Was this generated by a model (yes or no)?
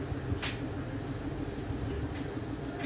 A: no